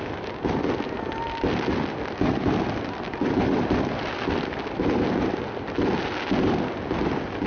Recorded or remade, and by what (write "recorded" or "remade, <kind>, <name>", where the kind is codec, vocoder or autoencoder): recorded